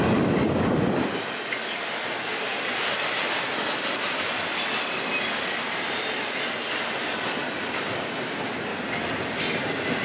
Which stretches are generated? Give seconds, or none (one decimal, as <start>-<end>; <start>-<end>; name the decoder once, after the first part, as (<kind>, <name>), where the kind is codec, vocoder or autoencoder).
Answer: none